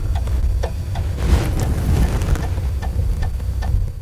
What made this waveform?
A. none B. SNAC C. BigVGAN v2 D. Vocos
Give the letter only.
A